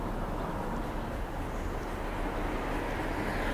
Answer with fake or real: real